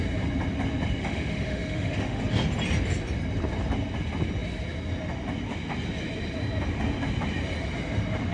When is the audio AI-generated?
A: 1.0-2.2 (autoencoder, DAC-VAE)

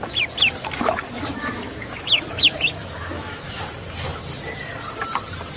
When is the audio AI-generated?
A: 0.6-3.6 (autoencoder, DAC-VAE)

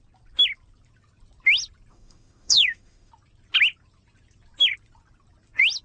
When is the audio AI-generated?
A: 1.9-3.1 (autoencoder, DAC-VAE)

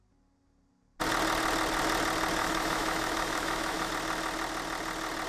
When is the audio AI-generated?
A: 2.4-3.9 (autoencoder, DAC-VAE)

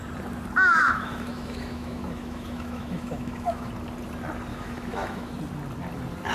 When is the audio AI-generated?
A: 0.7-3.7 (autoencoder, DAC-VAE); 4.5-5.3